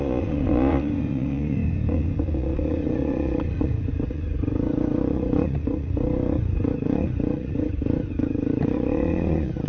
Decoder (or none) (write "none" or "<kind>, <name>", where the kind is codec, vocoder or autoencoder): vocoder, Vocos